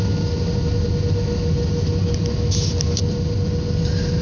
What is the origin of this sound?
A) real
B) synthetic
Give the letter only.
A